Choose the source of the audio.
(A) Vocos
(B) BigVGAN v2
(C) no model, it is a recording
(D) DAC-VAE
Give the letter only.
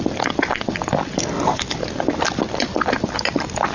C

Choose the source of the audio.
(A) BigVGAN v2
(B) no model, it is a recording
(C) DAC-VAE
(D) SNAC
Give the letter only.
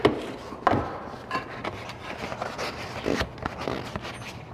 B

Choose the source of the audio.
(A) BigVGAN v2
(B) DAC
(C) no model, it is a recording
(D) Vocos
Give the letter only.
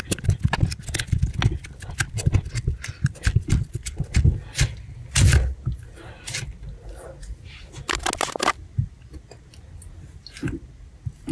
C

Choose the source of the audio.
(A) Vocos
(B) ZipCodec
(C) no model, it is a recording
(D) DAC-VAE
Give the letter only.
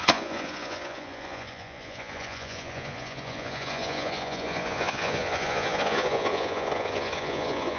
A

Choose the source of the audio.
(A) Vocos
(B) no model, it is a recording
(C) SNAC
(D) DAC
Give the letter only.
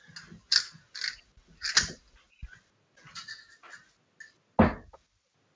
B